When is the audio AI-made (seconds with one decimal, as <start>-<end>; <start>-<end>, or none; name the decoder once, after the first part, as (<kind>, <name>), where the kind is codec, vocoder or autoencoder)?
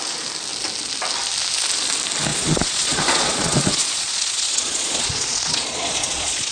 2.3-6.5 (vocoder, Vocos)